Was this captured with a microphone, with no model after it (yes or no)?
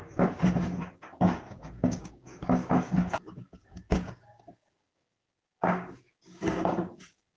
no